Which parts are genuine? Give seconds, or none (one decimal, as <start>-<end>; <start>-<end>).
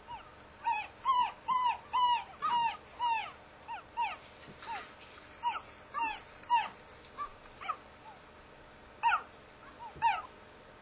0.0-10.8